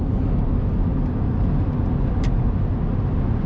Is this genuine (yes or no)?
yes